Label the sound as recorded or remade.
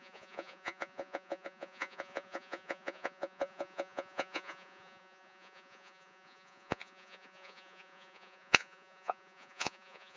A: remade